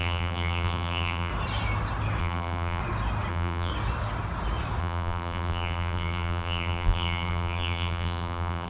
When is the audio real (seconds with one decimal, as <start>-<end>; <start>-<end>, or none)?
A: 1.3-2.2; 2.8-3.3; 3.7-4.8